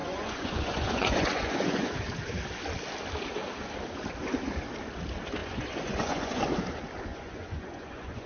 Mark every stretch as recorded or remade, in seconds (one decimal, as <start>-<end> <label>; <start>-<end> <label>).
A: 0.0-1.9 remade; 1.9-5.4 recorded; 5.4-6.4 remade; 6.4-7.1 recorded; 7.1-8.3 remade